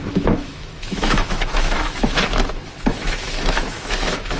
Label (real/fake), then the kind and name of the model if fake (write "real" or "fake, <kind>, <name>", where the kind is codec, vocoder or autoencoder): fake, autoencoder, DAC-VAE